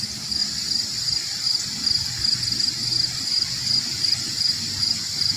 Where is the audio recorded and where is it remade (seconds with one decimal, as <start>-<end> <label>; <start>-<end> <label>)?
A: 0.0-5.4 recorded